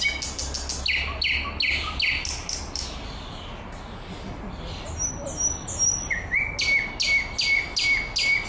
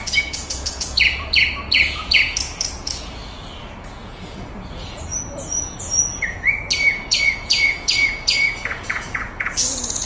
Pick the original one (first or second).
first